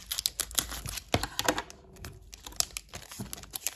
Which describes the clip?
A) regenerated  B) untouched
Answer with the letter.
B